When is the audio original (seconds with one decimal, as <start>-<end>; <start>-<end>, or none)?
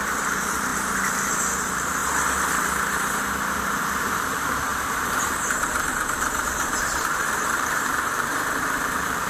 2.0-3.8